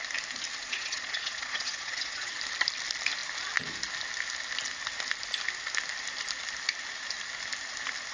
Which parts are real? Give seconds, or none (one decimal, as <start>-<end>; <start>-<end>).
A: 0.0-0.6; 2.3-8.1

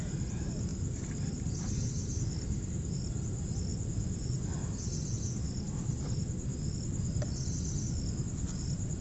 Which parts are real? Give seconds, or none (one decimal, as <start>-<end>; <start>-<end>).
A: 0.0-3.7; 4.5-9.0

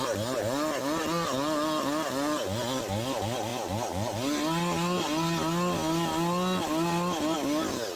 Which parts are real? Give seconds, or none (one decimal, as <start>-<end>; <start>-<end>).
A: 0.0-8.0